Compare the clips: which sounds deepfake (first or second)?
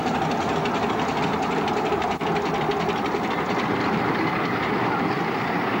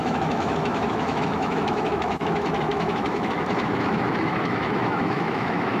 second